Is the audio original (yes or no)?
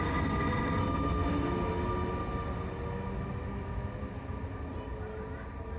yes